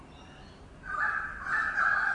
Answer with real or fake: real